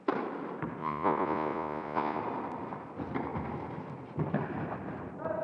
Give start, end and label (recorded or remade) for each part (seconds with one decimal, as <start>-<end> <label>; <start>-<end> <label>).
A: 0.0-0.8 recorded; 0.8-2.2 remade; 2.2-5.4 recorded